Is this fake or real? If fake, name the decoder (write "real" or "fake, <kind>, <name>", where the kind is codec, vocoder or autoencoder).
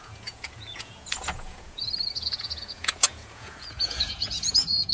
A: fake, vocoder, Vocos